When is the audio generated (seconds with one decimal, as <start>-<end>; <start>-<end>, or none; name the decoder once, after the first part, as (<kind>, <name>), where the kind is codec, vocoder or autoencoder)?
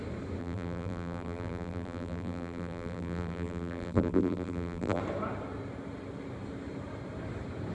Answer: 0.4-5.0 (vocoder, BigVGAN v2)